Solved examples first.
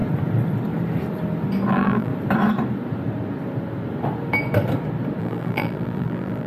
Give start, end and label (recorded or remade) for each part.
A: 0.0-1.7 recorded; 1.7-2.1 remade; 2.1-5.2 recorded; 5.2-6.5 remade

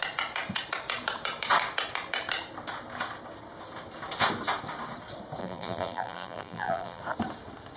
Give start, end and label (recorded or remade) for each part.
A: 0.0-5.4 recorded; 5.4-7.0 remade; 7.0-7.8 recorded